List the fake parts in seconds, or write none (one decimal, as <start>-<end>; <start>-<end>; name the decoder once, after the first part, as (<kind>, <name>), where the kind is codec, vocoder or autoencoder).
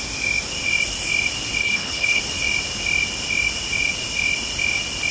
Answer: 1.6-2.2 (codec, HILCodec)